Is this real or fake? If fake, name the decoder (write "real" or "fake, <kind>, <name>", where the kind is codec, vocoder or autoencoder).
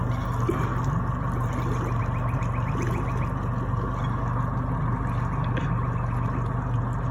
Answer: real